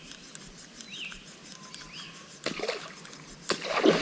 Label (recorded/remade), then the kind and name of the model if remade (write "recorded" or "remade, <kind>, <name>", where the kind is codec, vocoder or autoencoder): recorded